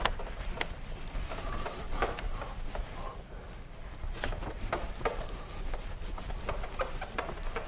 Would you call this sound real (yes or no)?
no